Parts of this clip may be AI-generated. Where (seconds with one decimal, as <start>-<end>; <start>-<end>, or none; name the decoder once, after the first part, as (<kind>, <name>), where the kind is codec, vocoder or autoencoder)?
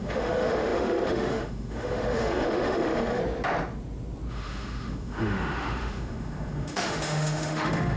0.0-3.2 (autoencoder, DAC-VAE); 4.3-8.0